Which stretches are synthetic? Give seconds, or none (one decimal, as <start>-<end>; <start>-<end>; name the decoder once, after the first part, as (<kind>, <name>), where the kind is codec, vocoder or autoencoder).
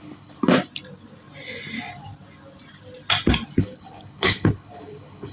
0.0-0.4 (codec, HILCodec); 3.6-5.3